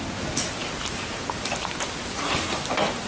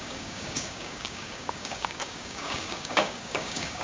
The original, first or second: first